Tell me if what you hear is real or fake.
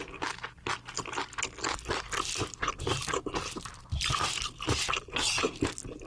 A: real